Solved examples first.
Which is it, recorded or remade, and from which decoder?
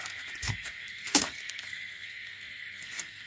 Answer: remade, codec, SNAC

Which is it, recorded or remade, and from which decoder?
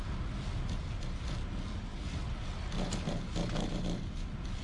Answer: recorded